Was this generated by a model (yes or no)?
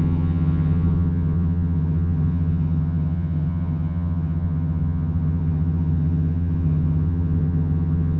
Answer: yes